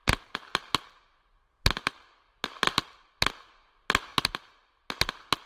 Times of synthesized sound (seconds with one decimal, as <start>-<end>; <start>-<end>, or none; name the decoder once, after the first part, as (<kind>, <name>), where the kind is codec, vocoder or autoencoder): none